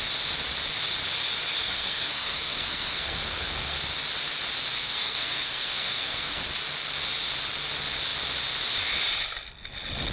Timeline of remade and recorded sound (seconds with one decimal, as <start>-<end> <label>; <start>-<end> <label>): 0.0-1.6 recorded; 1.6-3.8 remade; 3.8-4.8 recorded; 4.8-6.4 remade; 6.4-10.1 recorded